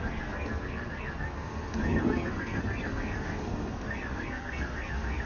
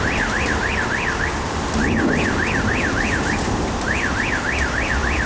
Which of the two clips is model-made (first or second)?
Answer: first